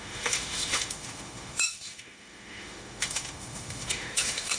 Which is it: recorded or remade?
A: remade